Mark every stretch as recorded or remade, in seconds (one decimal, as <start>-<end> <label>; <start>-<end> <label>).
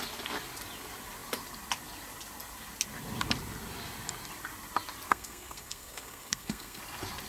0.0-5.1 recorded; 5.1-6.8 remade; 6.8-7.3 recorded